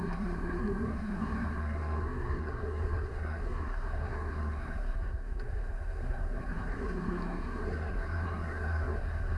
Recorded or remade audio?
remade